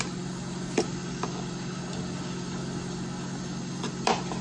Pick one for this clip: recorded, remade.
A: recorded